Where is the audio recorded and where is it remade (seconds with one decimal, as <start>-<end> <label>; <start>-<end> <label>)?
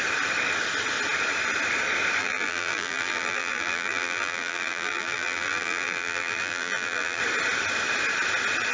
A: 0.0-2.2 recorded; 2.2-7.2 remade; 7.2-8.7 recorded